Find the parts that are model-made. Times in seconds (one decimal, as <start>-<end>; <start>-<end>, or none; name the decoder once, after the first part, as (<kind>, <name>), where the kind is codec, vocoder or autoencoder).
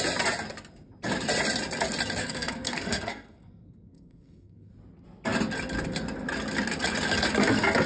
2.2-4.7 (codec, SNAC)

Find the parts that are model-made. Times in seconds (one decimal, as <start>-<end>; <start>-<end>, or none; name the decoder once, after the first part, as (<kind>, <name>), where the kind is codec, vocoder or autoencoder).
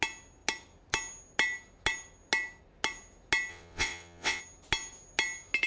3.5-4.4 (vocoder, WaveNeXt)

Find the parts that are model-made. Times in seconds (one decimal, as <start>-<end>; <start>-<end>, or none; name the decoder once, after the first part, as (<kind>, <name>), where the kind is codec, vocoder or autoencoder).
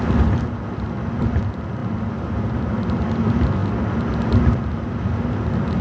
none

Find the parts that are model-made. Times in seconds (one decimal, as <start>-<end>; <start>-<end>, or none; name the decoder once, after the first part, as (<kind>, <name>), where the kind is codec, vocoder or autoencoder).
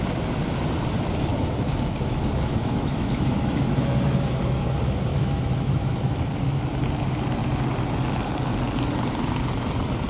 1.3-4.6 (autoencoder, DAC-VAE); 5.1-6.2